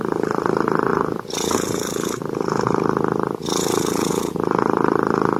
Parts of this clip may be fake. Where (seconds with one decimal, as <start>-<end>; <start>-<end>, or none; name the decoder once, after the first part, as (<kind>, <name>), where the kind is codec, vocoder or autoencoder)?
0.0-5.4 (vocoder, BigVGAN v2)